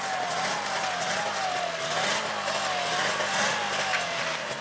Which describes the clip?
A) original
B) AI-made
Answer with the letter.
A